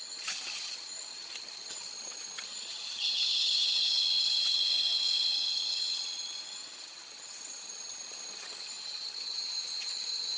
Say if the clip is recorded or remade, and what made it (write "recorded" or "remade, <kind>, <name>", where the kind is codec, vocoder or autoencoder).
remade, vocoder, HiFi-GAN